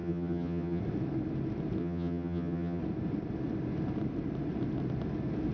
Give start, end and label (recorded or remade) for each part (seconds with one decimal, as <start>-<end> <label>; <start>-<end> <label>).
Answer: 0.0-0.8 remade; 0.8-1.8 recorded; 1.8-2.8 remade; 2.8-5.5 recorded